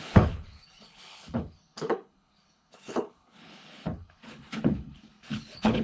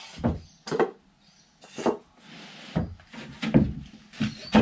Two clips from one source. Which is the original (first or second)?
second